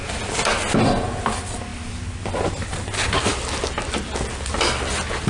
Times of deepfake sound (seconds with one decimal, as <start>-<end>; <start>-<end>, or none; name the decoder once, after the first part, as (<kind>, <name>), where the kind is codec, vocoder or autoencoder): none